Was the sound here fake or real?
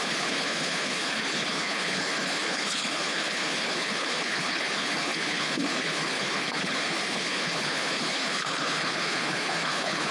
fake